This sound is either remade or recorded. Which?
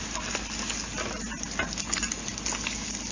recorded